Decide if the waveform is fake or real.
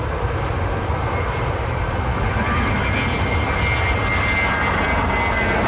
real